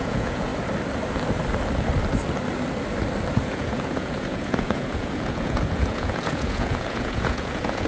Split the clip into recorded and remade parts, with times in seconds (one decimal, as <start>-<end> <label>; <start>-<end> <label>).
0.0-0.5 remade; 0.5-3.3 recorded; 3.3-7.9 remade